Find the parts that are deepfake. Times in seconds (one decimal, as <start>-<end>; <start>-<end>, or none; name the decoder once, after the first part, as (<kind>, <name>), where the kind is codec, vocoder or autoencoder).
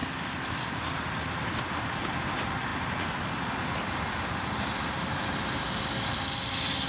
none